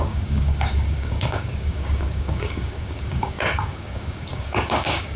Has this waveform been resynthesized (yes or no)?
yes